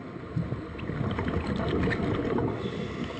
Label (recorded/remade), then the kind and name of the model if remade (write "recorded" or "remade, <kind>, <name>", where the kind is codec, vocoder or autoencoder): recorded